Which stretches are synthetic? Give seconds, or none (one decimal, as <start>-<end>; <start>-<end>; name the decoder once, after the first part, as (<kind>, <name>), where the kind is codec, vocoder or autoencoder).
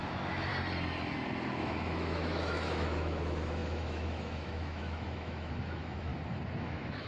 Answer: 0.0-0.5 (autoencoder, DAC-VAE); 1.5-6.1; 6.6-7.1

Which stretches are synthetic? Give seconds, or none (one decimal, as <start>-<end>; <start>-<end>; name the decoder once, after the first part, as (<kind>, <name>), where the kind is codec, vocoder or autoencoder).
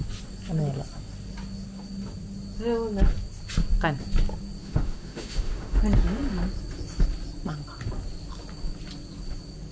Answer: 4.6-5.8 (autoencoder, DAC-VAE)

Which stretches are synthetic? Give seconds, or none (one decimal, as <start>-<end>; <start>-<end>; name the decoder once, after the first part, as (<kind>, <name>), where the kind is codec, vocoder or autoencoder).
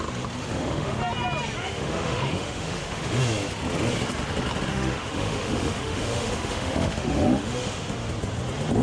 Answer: 0.4-1.0 (autoencoder, DAC-VAE); 1.6-3.2; 4.7-8.1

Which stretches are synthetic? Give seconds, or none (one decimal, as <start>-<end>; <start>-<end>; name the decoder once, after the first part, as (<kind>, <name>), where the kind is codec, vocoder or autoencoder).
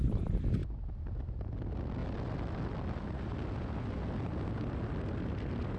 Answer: none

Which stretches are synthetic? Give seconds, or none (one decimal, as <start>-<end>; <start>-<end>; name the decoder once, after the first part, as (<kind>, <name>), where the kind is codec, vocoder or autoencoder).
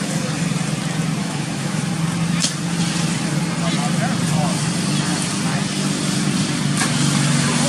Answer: 1.2-1.8 (autoencoder, DAC-VAE)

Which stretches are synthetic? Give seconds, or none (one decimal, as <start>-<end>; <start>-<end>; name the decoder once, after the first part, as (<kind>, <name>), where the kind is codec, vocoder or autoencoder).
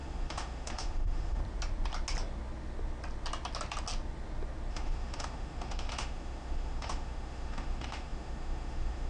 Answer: 0.0-1.4 (autoencoder, DAC-VAE); 4.7-9.1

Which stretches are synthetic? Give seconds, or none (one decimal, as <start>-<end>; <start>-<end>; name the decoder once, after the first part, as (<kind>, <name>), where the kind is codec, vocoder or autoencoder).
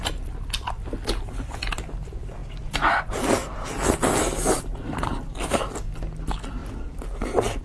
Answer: none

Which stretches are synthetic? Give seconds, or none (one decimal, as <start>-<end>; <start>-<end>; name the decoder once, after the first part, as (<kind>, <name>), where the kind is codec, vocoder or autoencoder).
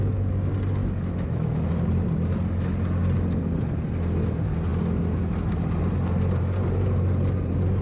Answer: 0.8-1.7 (autoencoder, DAC-VAE)